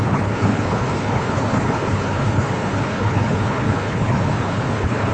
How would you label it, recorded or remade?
remade